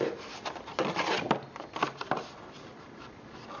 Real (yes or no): yes